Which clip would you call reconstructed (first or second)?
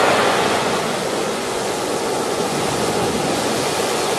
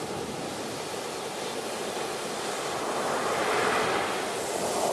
first